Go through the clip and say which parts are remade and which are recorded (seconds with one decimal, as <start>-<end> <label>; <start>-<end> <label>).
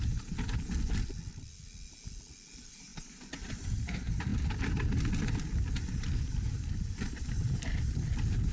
0.0-8.5 recorded